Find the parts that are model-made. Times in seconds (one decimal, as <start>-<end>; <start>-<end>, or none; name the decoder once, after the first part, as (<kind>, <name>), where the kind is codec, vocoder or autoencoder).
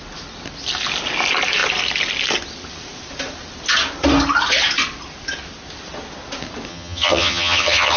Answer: 6.7-8.0 (vocoder, HiFi-GAN)